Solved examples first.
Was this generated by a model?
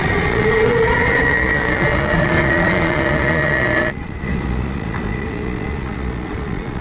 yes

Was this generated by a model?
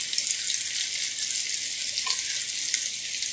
no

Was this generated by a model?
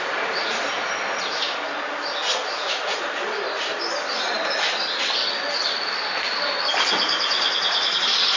no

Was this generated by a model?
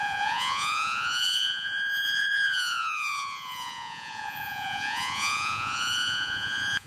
yes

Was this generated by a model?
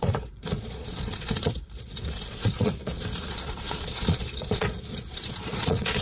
yes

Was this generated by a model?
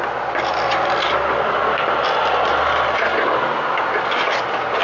no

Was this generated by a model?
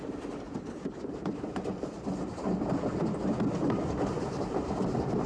no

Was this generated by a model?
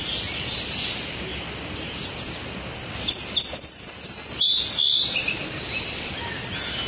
no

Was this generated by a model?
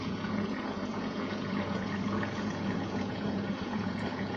yes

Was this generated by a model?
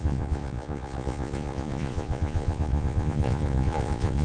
yes